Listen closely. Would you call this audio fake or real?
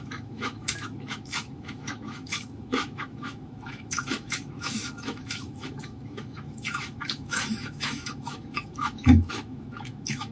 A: fake